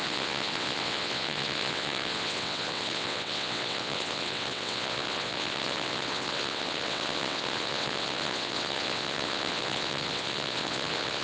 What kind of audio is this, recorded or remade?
remade